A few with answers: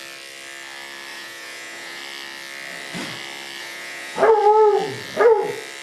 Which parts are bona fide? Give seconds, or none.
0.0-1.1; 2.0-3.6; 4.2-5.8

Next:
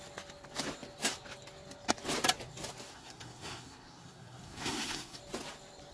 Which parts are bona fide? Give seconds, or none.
0.0-2.9; 5.2-5.9

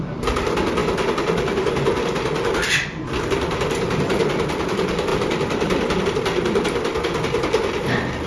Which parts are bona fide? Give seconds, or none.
0.0-5.1; 6.0-8.3

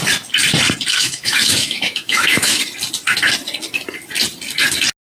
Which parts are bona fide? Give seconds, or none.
0.0-0.9; 2.6-5.1

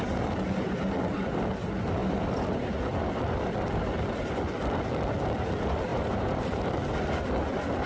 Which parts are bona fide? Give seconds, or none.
0.0-2.0; 2.8-5.9; 6.6-7.9

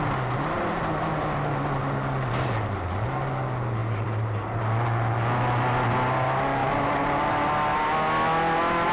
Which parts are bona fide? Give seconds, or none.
0.0-3.8; 4.6-6.6; 7.3-8.9